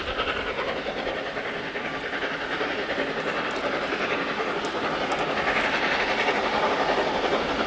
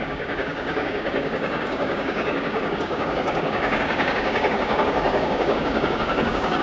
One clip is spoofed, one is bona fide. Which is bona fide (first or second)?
first